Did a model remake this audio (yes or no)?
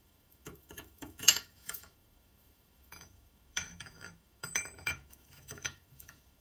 yes